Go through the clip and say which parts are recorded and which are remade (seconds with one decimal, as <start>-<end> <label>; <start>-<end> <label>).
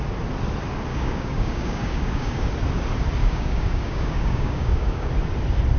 0.0-0.9 recorded; 0.9-2.5 remade; 2.5-3.2 recorded; 3.2-5.1 remade; 5.1-5.8 recorded